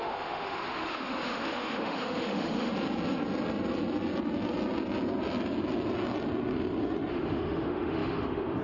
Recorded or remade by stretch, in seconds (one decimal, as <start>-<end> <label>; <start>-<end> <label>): 0.0-2.7 remade; 2.7-7.1 recorded; 7.1-8.6 remade